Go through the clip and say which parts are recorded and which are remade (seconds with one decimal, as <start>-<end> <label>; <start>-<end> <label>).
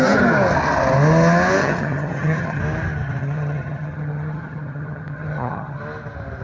0.0-1.6 recorded; 1.6-2.6 remade; 2.6-3.2 recorded; 3.2-5.8 remade; 5.8-6.4 recorded